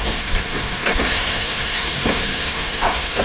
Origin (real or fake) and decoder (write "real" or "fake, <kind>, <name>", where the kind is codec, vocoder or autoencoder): fake, codec, SNAC